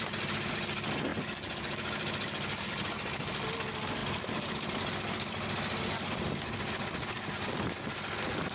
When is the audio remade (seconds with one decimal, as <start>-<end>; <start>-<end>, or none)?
none